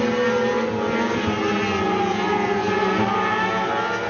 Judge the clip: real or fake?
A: real